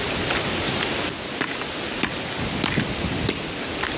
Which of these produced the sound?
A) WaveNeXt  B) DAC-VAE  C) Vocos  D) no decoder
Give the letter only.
D